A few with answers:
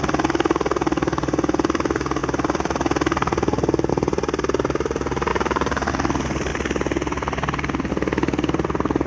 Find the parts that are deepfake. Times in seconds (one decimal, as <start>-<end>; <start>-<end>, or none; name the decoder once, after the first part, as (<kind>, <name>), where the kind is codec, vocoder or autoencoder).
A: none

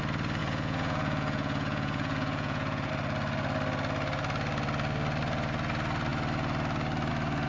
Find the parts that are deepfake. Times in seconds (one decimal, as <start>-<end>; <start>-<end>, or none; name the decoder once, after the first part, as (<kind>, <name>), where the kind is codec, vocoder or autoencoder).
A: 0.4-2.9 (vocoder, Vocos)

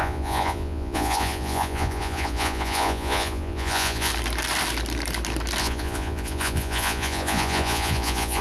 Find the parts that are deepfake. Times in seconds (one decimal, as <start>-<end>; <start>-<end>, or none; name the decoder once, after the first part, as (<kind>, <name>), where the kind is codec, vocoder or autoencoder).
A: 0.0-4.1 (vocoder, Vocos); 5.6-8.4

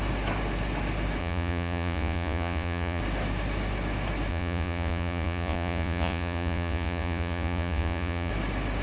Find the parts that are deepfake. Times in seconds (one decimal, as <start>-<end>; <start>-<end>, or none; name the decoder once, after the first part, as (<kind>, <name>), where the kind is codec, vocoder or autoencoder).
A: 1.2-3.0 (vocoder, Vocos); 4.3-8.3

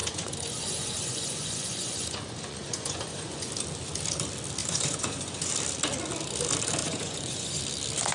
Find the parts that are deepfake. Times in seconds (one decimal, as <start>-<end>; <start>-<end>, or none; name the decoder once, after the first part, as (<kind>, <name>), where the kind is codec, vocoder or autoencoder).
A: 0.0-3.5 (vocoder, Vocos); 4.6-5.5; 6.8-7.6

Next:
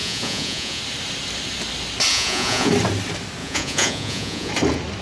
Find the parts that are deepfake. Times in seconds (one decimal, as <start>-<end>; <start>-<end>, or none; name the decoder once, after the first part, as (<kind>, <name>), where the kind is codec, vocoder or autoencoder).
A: 0.0-0.8 (vocoder, Vocos); 2.1-2.7; 3.4-4.5

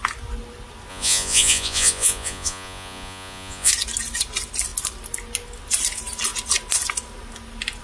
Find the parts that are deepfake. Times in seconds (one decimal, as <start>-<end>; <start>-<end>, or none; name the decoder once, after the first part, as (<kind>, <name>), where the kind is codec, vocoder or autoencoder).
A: 0.9-3.7 (vocoder, Vocos)